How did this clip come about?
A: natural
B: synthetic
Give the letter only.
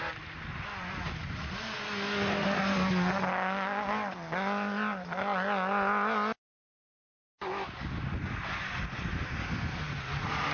A